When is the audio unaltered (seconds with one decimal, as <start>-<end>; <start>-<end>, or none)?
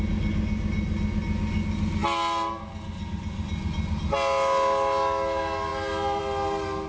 0.0-6.9